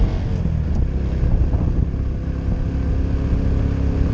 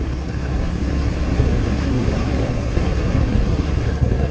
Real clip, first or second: first